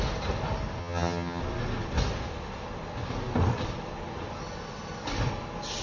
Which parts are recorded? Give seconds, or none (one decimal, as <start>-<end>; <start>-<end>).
0.0-0.8; 1.4-5.8